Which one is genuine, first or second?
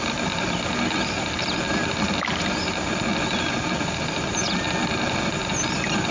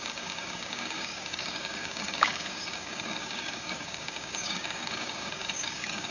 first